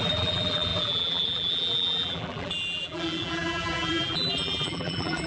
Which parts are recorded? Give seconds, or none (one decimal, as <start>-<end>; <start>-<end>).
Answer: none